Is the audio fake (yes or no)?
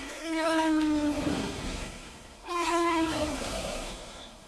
yes